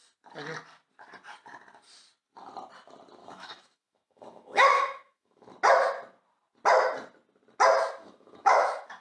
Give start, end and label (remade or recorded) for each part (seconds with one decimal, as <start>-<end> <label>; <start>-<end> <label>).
0.0-3.2 recorded; 3.2-5.5 remade; 5.5-8.0 recorded; 8.0-9.0 remade